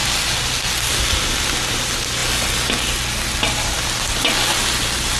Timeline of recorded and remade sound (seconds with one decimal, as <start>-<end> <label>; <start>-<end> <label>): 0.0-5.2 recorded